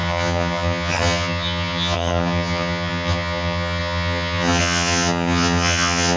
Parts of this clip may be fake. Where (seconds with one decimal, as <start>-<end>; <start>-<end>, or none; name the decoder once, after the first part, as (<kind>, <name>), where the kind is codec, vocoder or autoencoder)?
0.0-6.2 (vocoder, HiFi-GAN)